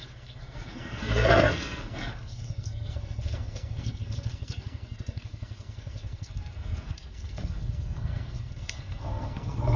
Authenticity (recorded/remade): remade